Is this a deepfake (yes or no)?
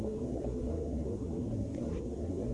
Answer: yes